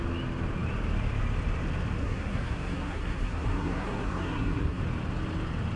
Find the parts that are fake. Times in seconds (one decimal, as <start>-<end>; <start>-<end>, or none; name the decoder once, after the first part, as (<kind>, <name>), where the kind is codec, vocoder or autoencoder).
2.0-4.8 (codec, SNAC)